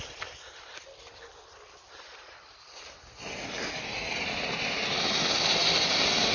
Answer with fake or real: real